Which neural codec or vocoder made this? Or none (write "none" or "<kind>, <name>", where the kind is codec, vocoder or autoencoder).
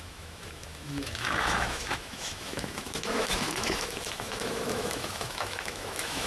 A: autoencoder, DAC-VAE